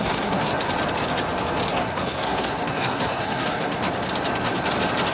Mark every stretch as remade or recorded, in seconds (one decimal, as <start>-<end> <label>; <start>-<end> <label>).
0.0-0.7 remade; 0.7-1.7 recorded; 1.7-3.8 remade; 3.8-5.1 recorded